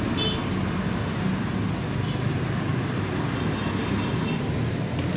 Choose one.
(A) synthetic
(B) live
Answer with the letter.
B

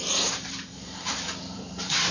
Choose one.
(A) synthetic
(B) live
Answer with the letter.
A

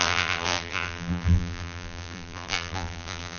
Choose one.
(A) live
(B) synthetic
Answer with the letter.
B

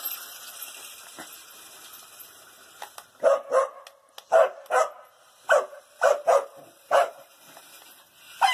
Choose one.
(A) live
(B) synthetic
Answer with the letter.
A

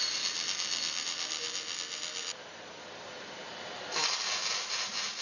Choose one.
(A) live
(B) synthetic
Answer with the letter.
B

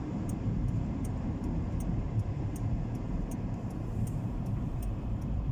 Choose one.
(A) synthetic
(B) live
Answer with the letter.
A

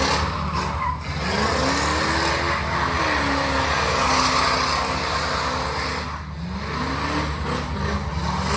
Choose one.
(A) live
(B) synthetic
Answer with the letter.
A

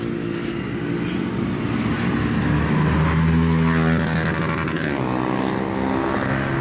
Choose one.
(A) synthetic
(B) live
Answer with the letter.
B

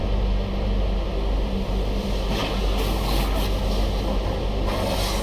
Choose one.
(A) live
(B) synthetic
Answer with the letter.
A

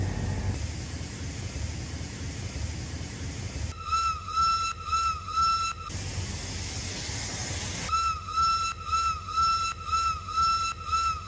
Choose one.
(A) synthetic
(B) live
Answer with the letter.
B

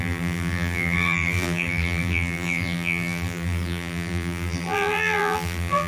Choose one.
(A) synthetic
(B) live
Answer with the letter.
A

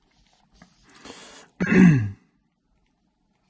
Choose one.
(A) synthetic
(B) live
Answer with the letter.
B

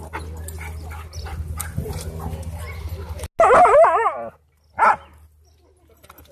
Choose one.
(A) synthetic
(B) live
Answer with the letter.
B